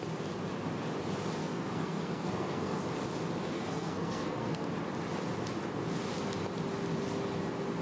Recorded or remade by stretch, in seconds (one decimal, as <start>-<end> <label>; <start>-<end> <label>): 0.0-1.4 recorded; 1.4-2.8 remade; 2.8-3.5 recorded; 3.5-4.7 remade; 4.7-7.8 recorded